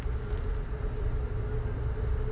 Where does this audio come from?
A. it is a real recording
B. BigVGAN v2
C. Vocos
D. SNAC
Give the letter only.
A